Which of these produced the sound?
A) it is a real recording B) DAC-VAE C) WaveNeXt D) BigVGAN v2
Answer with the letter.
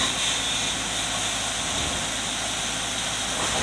A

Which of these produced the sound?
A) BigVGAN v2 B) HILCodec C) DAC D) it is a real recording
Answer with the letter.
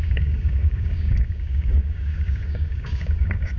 C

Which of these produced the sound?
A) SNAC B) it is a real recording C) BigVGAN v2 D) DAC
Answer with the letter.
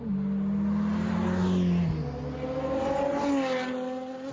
B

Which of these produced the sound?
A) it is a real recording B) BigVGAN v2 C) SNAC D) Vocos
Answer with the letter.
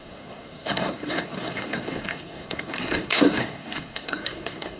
C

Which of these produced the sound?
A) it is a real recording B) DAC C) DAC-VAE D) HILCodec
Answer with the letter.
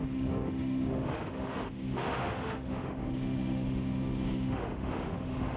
C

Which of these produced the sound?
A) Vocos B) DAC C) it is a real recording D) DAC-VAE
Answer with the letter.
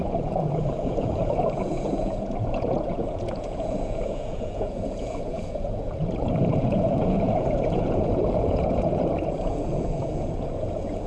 A